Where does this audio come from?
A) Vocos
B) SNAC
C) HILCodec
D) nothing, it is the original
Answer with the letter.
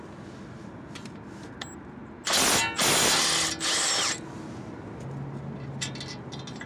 D